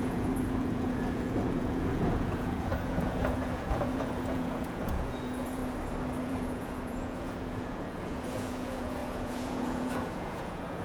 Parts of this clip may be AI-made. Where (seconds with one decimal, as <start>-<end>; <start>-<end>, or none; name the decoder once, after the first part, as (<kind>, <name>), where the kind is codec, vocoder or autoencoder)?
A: 0.0-5.6 (vocoder, Vocos); 6.2-10.8